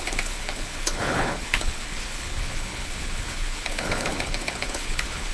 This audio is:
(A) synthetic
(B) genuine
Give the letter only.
A